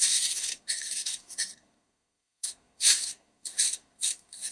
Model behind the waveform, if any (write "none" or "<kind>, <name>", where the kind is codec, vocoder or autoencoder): codec, SNAC